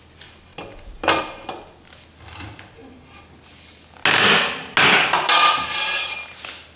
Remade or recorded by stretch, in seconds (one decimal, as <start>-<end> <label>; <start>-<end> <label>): 0.0-6.8 recorded